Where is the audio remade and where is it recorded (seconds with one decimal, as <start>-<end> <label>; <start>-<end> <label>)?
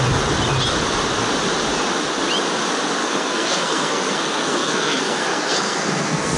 0.0-3.0 recorded; 3.0-6.4 remade